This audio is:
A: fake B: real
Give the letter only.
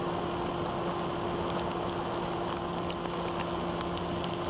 B